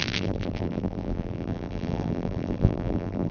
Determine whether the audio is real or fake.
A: fake